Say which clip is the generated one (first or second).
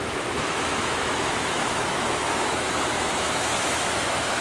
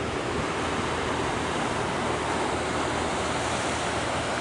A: first